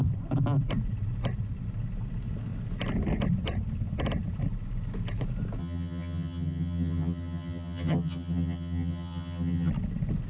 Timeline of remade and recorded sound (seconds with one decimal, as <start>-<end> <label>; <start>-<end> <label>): 0.0-5.6 recorded; 5.6-9.7 remade; 9.7-10.3 recorded